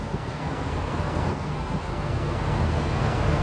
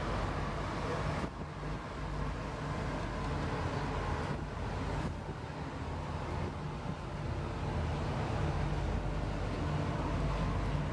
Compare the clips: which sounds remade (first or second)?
first